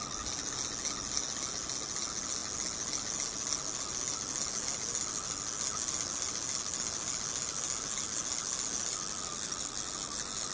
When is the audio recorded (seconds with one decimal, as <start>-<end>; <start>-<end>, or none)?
0.0-10.5